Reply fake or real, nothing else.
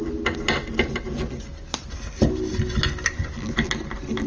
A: real